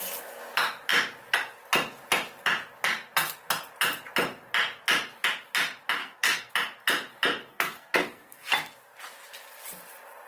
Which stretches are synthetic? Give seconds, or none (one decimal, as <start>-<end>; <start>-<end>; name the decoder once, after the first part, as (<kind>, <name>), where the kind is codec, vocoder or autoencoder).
6.0-6.5 (codec, SNAC); 7.5-8.5